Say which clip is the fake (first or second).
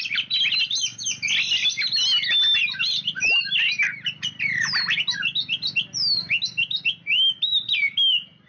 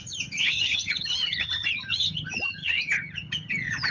second